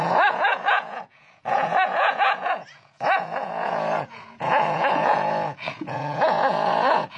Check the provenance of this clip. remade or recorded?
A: remade